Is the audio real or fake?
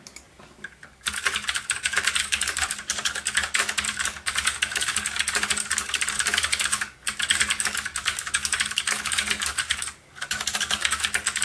fake